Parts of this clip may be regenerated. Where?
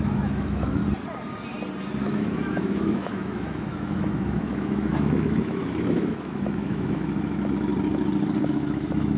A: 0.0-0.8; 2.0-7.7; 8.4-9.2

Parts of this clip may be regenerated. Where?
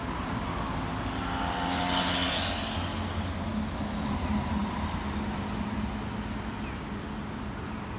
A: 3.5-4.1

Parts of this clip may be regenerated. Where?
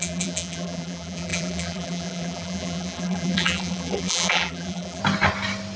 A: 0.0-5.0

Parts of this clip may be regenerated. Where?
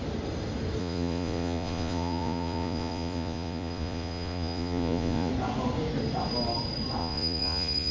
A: 0.8-5.3; 7.0-7.9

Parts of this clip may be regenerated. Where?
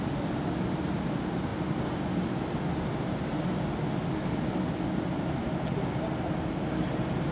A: none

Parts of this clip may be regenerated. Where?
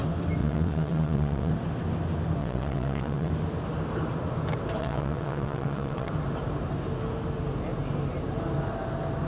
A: 0.4-1.5; 2.4-3.3; 4.8-6.1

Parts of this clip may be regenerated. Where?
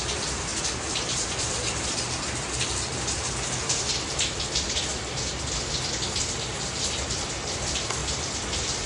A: 0.5-2.1; 8.0-8.9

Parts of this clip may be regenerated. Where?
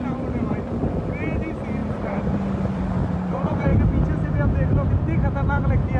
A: 1.8-3.3